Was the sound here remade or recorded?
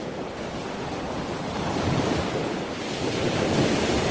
recorded